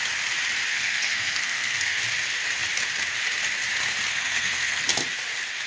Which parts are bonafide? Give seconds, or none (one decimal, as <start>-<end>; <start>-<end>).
0.0-0.7; 2.0-4.1; 4.8-5.7